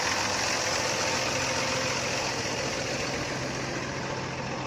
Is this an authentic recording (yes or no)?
yes